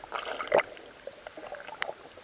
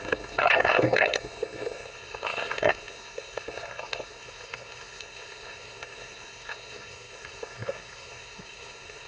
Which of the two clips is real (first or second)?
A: first